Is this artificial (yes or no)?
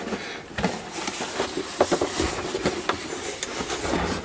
no